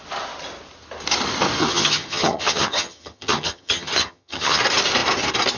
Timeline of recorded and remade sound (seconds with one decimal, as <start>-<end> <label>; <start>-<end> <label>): 0.0-1.6 recorded; 1.6-4.6 remade; 4.6-5.6 recorded